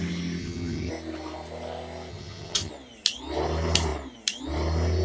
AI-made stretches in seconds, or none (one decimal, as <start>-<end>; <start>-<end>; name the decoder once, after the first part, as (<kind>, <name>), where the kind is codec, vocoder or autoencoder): 0.4-0.9 (vocoder, HiFi-GAN); 2.1-2.7